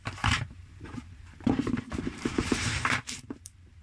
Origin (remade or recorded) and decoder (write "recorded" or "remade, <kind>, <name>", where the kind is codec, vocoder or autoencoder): remade, vocoder, BigVGAN v2